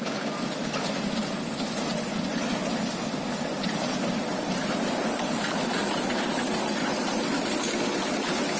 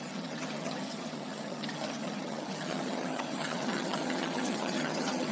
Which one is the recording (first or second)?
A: first